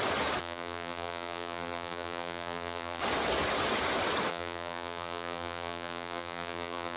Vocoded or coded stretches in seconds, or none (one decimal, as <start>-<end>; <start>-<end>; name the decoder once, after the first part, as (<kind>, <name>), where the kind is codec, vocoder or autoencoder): 0.4-3.0 (vocoder, BigVGAN v2); 4.3-7.0